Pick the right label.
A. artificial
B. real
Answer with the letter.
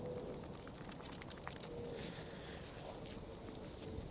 B